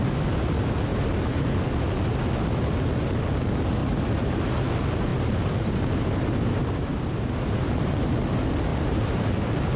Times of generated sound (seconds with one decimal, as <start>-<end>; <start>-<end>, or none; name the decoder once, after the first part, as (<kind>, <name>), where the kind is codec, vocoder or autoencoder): 0.9-1.5 (vocoder, BigVGAN v2); 3.8-4.4; 5.1-8.2; 8.7-9.3